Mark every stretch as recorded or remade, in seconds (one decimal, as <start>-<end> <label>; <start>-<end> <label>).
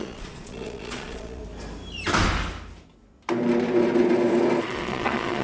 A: 0.0-1.4 remade; 1.4-4.6 recorded; 4.6-5.4 remade